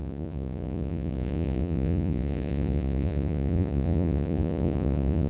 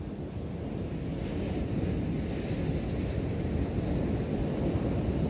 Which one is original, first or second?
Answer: second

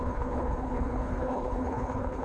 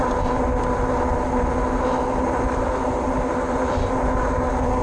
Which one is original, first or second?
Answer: second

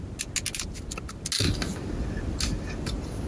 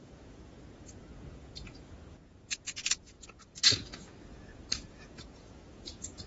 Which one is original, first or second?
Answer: first